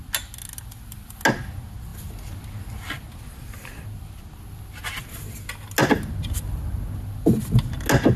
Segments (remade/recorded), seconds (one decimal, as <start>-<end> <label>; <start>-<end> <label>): 0.0-8.2 recorded